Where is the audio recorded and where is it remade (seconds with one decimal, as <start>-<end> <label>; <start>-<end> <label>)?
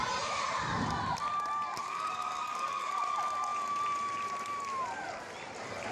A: 0.0-1.7 recorded; 1.7-3.1 remade; 3.1-5.9 recorded